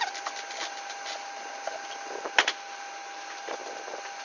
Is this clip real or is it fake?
real